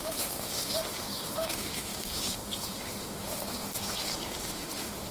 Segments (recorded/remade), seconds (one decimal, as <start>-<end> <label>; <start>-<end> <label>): 0.0-5.1 remade